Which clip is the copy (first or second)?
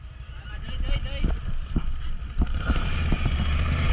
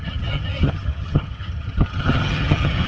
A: second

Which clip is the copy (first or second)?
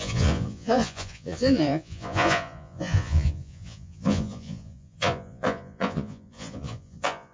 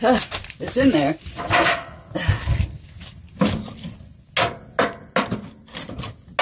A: first